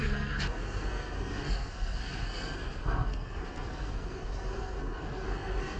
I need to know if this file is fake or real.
fake